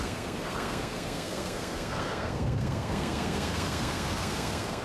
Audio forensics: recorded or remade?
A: remade